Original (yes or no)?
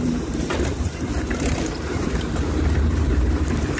no